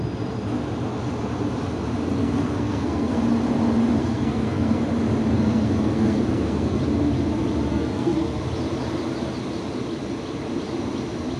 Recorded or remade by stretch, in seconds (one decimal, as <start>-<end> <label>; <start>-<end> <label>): 0.0-2.2 recorded; 2.2-3.2 remade; 3.2-4.0 recorded; 4.0-4.8 remade; 4.8-5.3 recorded; 5.3-6.8 remade; 6.8-7.7 recorded; 7.7-8.4 remade; 8.4-11.4 recorded